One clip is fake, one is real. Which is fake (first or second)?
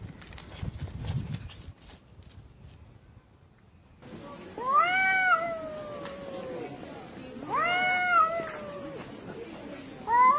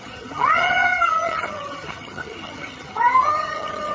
second